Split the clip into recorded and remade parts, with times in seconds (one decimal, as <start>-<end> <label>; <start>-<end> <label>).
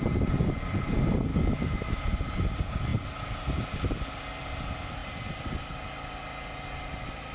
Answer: 0.0-1.3 recorded; 1.3-2.0 remade; 2.0-7.3 recorded